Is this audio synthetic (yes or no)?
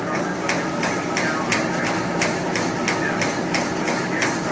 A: no